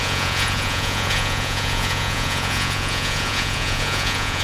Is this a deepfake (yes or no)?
yes